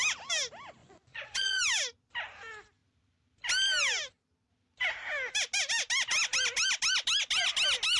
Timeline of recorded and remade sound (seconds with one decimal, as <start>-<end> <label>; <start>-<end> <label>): 0.0-0.8 recorded; 0.8-1.6 remade; 1.6-8.0 recorded